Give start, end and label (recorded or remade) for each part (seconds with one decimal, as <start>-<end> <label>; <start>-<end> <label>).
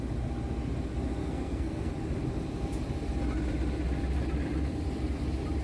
0.0-1.2 recorded; 1.2-1.9 remade; 1.9-5.6 recorded